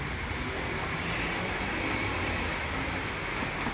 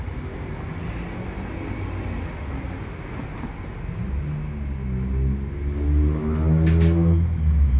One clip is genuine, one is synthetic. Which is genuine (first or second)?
second